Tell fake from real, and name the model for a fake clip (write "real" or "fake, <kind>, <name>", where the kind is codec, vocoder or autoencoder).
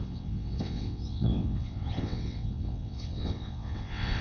fake, vocoder, WaveNeXt